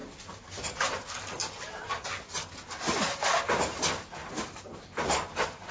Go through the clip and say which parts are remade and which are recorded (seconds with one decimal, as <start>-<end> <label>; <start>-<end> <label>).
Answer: 0.0-0.5 remade; 0.5-1.4 recorded; 1.4-2.6 remade; 2.6-4.2 recorded; 4.2-4.8 remade; 4.8-5.7 recorded